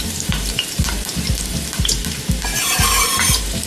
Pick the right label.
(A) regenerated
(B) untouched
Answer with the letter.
A